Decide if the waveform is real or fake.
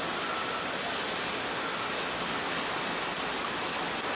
real